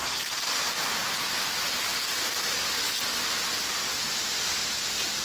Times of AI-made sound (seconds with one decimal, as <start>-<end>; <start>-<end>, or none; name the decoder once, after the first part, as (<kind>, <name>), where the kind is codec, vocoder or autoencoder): none